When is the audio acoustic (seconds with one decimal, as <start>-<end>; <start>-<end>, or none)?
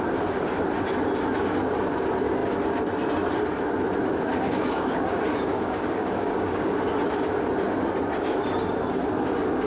0.0-4.3; 6.7-9.7